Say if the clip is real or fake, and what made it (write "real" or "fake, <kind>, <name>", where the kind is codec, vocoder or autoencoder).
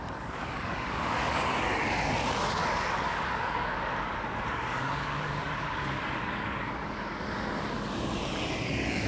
fake, codec, DAC